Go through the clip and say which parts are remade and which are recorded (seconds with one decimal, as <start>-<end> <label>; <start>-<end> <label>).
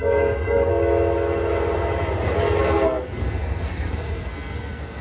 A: 0.0-0.7 remade; 0.7-2.6 recorded; 2.6-5.0 remade